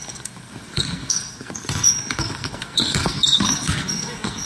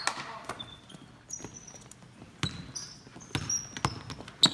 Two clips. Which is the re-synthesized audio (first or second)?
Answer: first